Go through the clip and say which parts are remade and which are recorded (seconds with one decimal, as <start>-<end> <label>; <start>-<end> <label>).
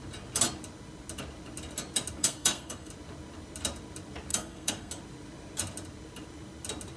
0.0-2.2 recorded; 2.2-2.9 remade; 2.9-4.3 recorded; 4.3-4.9 remade; 4.9-7.0 recorded